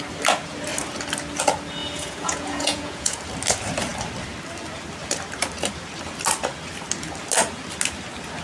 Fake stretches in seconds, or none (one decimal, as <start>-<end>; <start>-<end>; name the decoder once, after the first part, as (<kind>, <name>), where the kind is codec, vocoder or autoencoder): 1.8-3.2 (vocoder, Vocos)